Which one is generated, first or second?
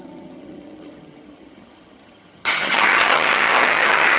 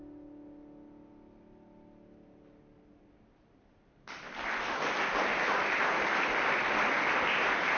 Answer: first